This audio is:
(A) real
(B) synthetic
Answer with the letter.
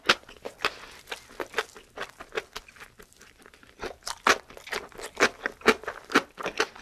A